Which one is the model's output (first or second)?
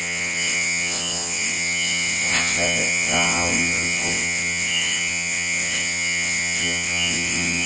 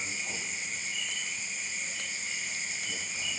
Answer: first